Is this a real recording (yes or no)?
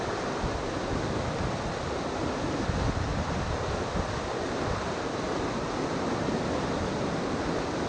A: yes